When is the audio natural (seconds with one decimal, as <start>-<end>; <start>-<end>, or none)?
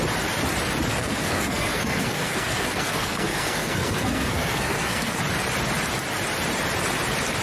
0.0-0.9; 5.2-7.4